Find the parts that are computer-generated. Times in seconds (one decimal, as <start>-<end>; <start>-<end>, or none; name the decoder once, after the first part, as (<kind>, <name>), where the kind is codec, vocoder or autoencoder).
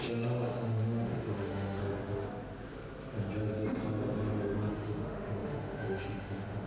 0.0-1.8 (autoencoder, DAC-VAE); 4.7-6.7